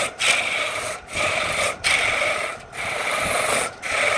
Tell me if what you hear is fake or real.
real